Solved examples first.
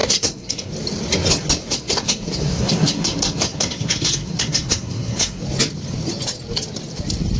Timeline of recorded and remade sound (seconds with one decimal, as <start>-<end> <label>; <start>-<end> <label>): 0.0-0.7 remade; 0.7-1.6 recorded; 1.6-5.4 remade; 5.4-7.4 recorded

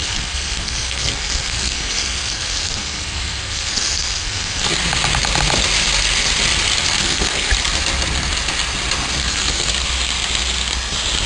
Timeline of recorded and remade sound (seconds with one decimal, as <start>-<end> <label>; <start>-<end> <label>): 0.0-4.7 remade; 4.7-7.0 recorded; 7.0-7.5 remade; 7.5-9.2 recorded; 9.2-9.7 remade; 9.7-11.3 recorded

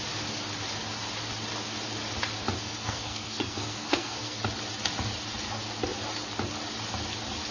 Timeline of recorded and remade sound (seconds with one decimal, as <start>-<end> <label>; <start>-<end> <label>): 0.0-2.6 recorded; 2.6-4.4 remade; 4.4-7.5 recorded